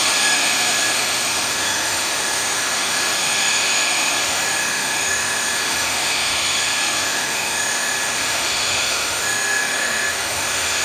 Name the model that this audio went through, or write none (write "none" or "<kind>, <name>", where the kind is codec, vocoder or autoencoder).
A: autoencoder, DAC-VAE